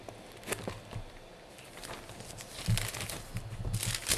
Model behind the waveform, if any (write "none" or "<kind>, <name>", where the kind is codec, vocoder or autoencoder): none